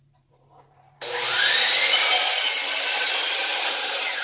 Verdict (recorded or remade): remade